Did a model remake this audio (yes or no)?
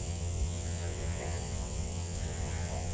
yes